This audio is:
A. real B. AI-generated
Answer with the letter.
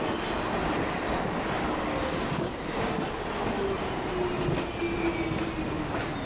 A